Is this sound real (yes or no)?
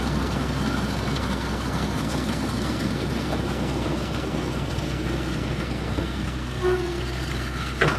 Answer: no